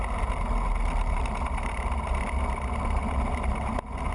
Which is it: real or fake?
real